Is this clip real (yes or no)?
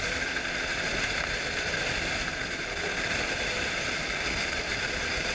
no